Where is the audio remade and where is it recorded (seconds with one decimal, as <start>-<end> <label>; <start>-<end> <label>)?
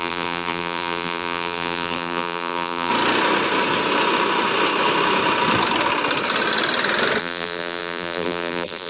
0.0-2.9 remade; 2.9-7.2 recorded; 7.2-8.9 remade